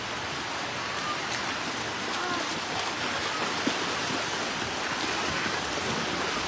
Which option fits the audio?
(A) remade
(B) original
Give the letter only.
B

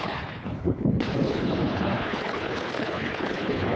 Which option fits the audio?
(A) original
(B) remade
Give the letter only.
B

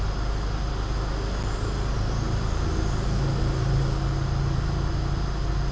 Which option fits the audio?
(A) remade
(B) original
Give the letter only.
B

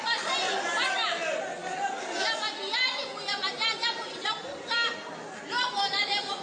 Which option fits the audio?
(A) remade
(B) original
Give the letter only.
B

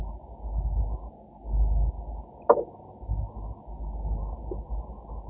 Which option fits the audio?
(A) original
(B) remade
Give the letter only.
A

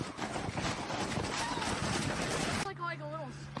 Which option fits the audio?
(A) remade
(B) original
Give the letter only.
B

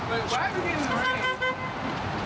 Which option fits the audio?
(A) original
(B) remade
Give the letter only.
A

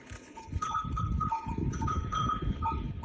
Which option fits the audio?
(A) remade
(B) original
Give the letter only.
A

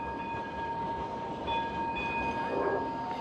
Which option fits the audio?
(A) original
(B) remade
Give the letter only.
A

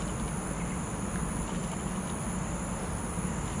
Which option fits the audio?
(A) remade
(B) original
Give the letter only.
B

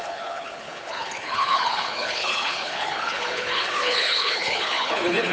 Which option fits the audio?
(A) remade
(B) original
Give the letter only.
A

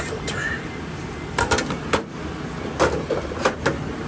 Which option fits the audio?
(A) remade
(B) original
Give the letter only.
B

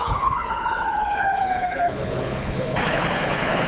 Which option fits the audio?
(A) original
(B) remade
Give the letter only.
B